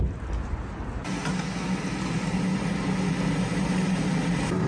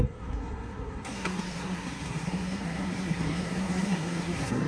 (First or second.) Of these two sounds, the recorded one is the first